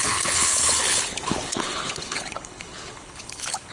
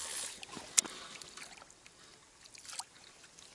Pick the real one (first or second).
second